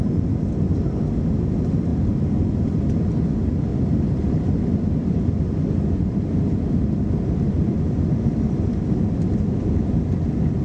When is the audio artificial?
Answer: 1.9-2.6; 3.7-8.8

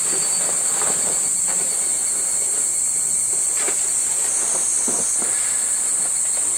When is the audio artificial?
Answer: 0.0-4.7; 6.1-6.6

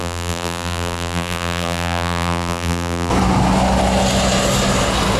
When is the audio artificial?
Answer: 0.0-3.1

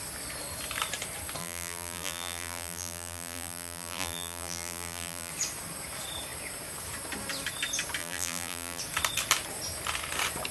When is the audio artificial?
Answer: 1.4-5.3; 8.0-8.8

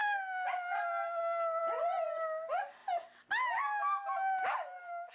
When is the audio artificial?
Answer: 1.6-2.8; 4.4-5.1

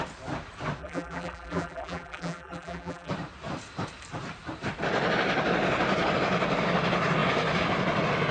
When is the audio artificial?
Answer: 0.8-3.1